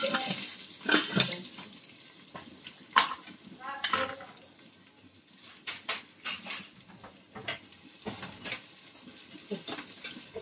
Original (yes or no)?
yes